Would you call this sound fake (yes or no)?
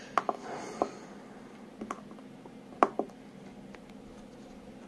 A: no